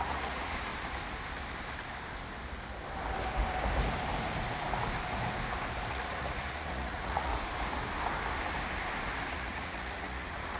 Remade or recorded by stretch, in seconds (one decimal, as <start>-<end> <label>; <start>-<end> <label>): 0.0-0.7 remade; 0.7-5.9 recorded; 5.9-7.3 remade; 7.3-9.3 recorded; 9.3-10.6 remade